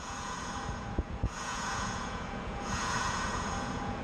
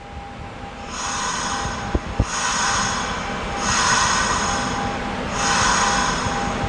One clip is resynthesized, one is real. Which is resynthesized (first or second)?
first